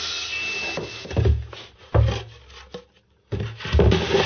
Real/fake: real